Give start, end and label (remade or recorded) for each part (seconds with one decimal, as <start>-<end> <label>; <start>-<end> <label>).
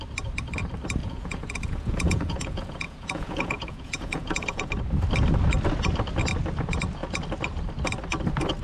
0.0-1.0 recorded; 1.0-4.7 remade; 4.7-8.6 recorded